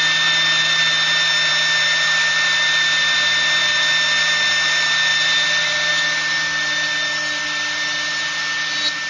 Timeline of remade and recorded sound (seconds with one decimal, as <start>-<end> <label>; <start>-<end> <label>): 0.0-9.1 recorded